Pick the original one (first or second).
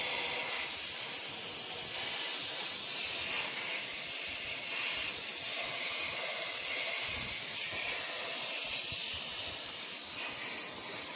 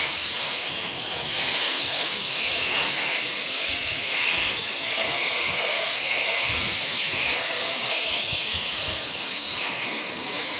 first